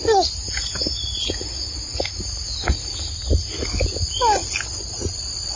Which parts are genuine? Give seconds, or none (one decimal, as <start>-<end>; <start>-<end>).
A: 0.0-5.6